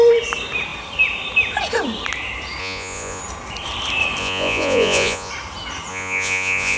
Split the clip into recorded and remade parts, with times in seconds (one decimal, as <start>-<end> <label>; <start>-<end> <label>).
0.0-2.6 recorded; 2.6-3.2 remade; 3.2-4.2 recorded; 4.2-5.3 remade; 5.3-5.9 recorded; 5.9-6.8 remade